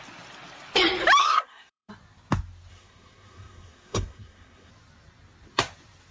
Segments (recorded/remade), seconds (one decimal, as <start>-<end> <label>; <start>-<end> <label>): 0.0-1.2 recorded; 1.2-1.9 remade; 1.9-2.7 recorded; 2.7-4.7 remade; 4.7-6.1 recorded